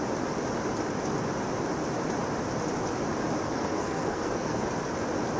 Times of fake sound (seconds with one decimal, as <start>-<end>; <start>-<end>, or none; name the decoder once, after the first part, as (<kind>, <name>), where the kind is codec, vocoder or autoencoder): 3.4-4.6 (codec, SNAC)